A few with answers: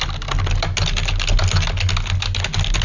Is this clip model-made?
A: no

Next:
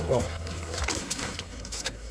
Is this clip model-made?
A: yes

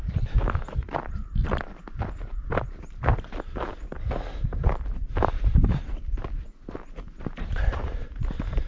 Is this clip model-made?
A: no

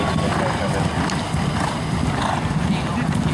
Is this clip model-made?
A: no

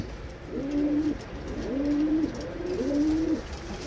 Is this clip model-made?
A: yes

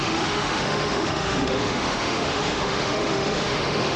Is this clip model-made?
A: yes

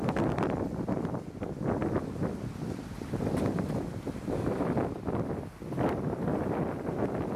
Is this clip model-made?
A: no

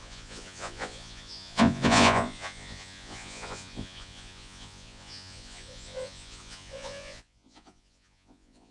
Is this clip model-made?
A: yes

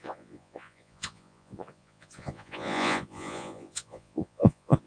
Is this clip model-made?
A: yes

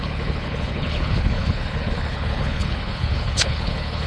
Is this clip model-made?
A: yes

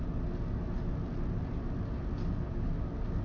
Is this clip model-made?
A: no